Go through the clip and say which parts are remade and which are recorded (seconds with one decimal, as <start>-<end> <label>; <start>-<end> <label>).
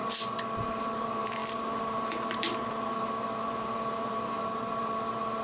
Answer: 0.0-0.6 recorded; 0.6-5.4 remade